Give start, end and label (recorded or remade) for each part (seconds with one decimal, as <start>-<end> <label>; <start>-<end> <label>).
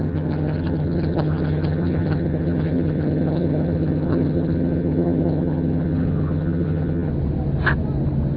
0.0-7.1 remade; 7.1-8.4 recorded